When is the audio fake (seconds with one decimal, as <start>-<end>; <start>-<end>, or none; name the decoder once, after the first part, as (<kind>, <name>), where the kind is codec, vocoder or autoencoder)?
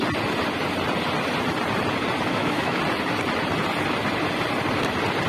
2.3-2.8 (autoencoder, DAC-VAE)